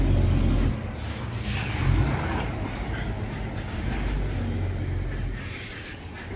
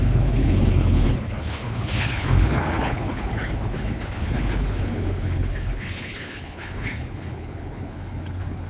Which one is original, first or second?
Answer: first